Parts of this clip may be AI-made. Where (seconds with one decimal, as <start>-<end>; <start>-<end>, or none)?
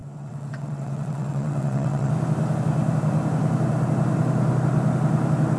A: 0.0-2.1